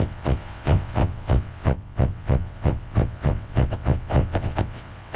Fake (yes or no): yes